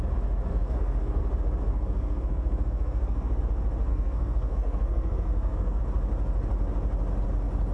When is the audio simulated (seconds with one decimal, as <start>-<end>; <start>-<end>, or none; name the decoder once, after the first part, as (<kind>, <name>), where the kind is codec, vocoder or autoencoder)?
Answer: 0.5-1.2 (codec, SNAC); 1.7-3.4; 3.9-5.8